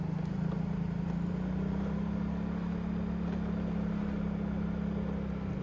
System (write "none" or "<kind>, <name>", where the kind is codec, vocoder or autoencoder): none